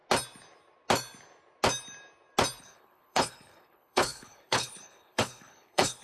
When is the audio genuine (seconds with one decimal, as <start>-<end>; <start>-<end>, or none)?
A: 0.0-2.6